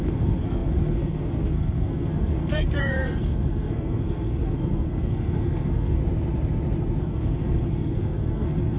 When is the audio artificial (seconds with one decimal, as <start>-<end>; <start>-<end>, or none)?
0.0-6.0; 7.0-8.8